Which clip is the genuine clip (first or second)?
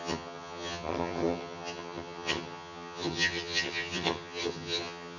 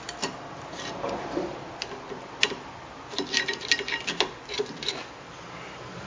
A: second